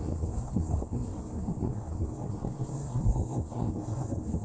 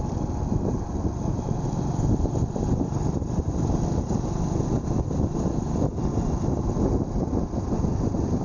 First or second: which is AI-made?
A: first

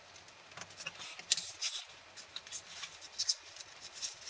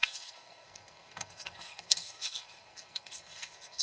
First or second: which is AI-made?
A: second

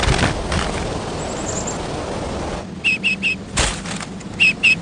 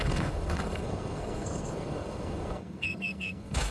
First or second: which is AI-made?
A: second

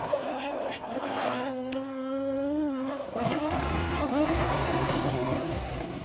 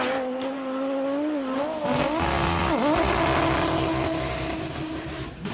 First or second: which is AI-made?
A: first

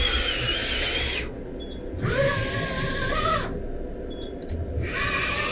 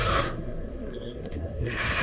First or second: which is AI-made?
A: second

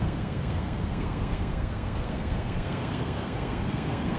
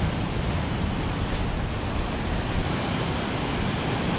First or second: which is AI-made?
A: first